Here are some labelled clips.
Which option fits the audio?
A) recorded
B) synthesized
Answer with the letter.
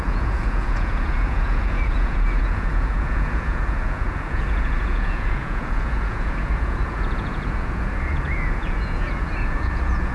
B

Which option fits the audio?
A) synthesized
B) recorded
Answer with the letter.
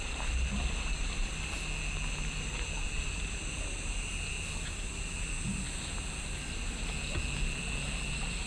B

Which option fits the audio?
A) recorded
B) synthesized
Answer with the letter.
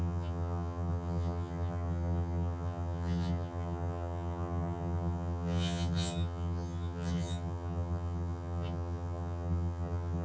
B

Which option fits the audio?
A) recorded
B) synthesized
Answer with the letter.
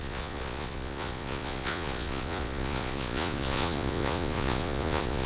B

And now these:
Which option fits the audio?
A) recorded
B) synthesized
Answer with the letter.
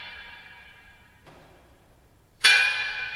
B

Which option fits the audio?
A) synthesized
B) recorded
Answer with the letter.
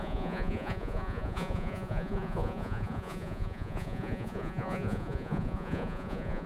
A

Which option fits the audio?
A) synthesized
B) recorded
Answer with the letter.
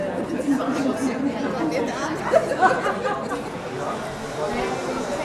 B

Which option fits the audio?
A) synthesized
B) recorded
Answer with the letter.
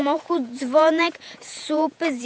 A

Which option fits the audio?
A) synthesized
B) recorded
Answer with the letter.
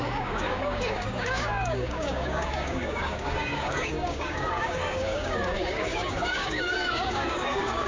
A